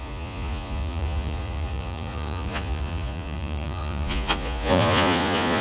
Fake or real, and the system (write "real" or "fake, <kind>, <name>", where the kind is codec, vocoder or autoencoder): fake, vocoder, Vocos